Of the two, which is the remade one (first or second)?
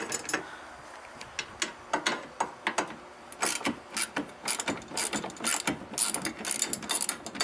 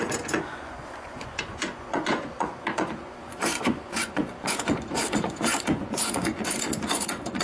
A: second